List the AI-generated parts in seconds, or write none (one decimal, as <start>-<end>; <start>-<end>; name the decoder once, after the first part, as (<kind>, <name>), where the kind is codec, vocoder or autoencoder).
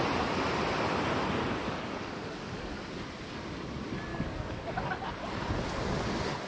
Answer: 1.6-2.9 (codec, DAC); 4.1-5.1